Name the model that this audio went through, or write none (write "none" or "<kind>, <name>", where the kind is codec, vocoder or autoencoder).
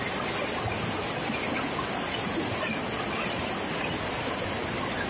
none